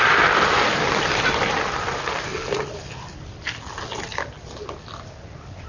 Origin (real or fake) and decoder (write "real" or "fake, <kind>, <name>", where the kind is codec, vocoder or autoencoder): real